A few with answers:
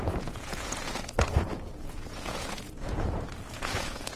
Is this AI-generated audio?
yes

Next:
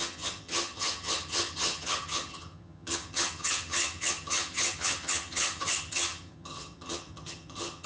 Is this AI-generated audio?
yes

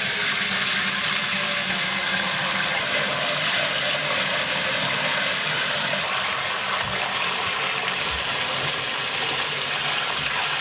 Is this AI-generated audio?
no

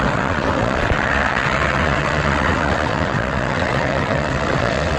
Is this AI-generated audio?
yes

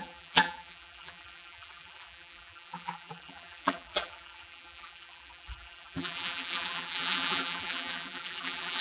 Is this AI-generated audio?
yes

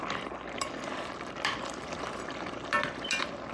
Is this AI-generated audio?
yes